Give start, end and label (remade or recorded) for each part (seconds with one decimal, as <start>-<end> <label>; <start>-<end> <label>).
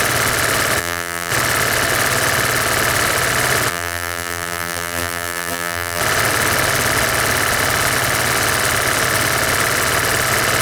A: 0.0-0.8 recorded; 0.8-1.3 remade; 1.3-3.7 recorded; 3.7-6.0 remade; 6.0-10.6 recorded